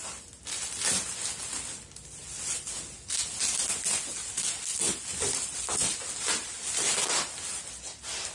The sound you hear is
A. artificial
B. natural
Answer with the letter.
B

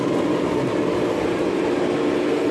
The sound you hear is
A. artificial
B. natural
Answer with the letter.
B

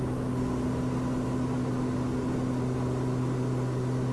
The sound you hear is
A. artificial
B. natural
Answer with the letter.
B